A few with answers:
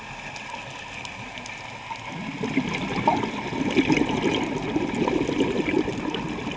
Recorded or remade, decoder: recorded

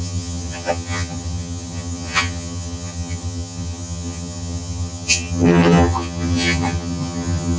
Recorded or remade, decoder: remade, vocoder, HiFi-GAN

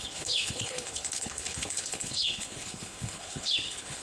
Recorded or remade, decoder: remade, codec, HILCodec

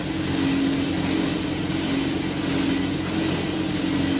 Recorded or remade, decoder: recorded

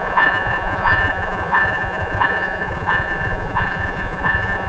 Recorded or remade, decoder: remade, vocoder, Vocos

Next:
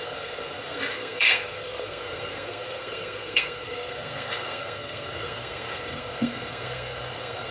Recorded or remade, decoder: remade, codec, SNAC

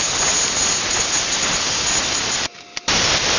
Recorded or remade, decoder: recorded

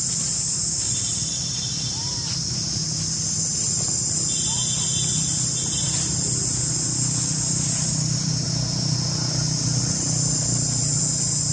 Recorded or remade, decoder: recorded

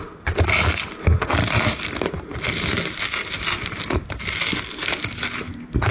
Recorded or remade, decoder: recorded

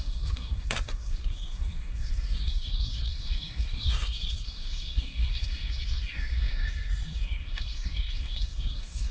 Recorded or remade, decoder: remade, codec, SNAC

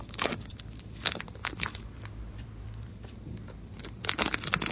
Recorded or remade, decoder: remade, vocoder, BigVGAN v2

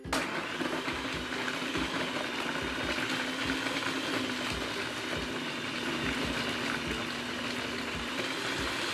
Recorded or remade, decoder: recorded